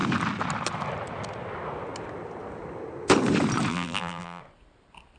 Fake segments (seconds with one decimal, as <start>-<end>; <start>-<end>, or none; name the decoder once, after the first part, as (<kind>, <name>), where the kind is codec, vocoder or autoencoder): 3.7-4.4 (vocoder, BigVGAN v2)